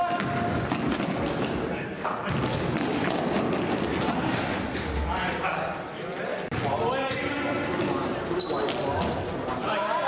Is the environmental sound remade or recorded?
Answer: recorded